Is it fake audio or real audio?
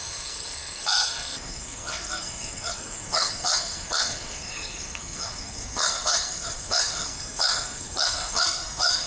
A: fake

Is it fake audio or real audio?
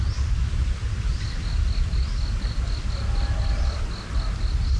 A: real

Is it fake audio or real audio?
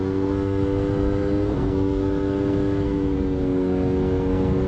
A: fake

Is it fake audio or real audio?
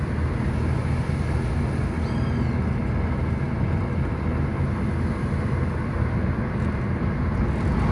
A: real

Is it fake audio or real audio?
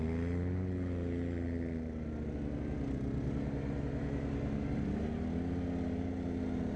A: real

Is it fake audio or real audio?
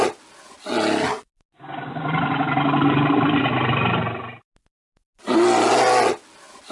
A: real